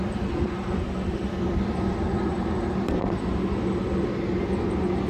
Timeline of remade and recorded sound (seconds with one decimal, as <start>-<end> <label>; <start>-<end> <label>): 0.0-2.3 recorded; 2.3-3.4 remade; 3.4-5.1 recorded